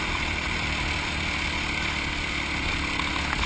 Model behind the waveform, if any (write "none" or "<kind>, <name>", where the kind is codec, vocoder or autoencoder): vocoder, BigVGAN v2